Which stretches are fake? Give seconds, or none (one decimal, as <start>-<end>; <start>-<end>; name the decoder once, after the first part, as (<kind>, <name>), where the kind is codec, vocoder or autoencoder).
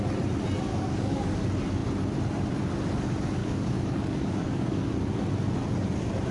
0.7-1.4 (codec, DAC); 3.4-4.9